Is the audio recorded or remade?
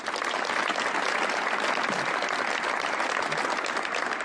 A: recorded